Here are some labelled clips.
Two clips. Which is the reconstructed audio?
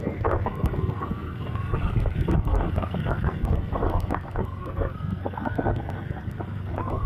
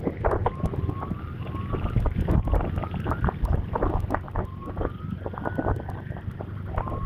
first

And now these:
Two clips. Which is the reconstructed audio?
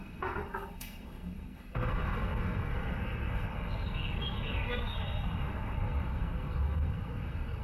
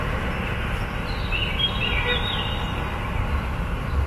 first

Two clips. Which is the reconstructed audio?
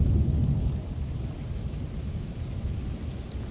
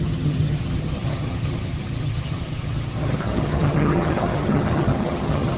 second